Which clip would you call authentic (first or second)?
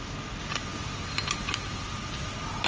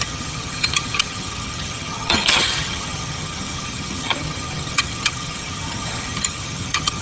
first